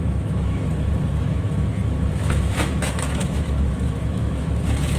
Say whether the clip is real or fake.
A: fake